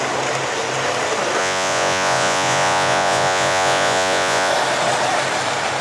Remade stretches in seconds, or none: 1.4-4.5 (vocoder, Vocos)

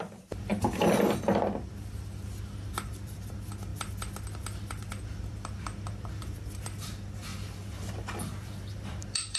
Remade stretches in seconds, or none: 0.0-0.5 (vocoder, BigVGAN v2); 1.6-3.7; 5.9-9.4

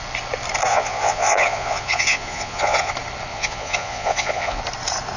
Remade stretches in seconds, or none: 0.7-2.9 (vocoder, Vocos); 3.3-4.6

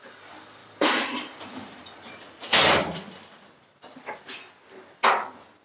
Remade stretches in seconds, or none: 0.6-2.2 (vocoder, BigVGAN v2)